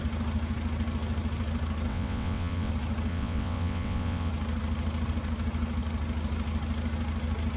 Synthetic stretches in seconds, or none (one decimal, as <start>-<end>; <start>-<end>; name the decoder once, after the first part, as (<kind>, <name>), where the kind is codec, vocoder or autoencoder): 1.9-2.7 (vocoder, WaveNeXt); 3.1-4.3